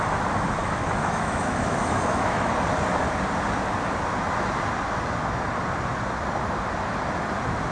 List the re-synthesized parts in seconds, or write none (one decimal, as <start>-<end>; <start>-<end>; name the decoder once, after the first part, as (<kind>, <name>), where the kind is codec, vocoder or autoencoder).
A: 0.6-2.5 (autoencoder, DAC-VAE)